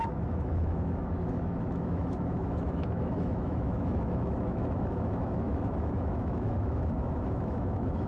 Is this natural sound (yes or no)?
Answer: no